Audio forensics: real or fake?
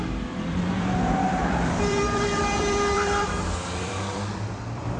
fake